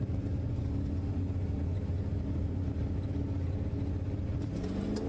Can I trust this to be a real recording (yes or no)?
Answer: yes